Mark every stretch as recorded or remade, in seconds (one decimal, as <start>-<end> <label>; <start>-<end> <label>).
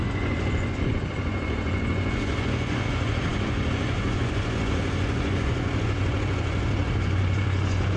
0.0-8.0 remade